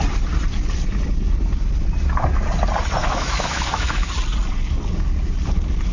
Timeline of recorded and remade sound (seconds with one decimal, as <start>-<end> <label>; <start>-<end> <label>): 0.0-3.0 recorded; 3.0-4.1 remade; 4.1-5.9 recorded